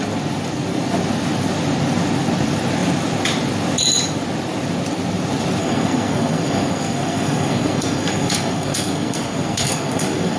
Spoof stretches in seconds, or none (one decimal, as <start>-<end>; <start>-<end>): 5.6-10.4